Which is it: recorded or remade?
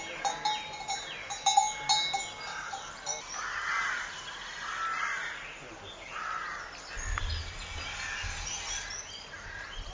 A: recorded